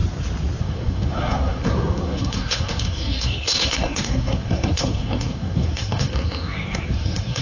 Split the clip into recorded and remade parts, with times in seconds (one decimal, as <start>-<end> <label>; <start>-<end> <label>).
0.0-0.6 recorded; 0.6-7.4 remade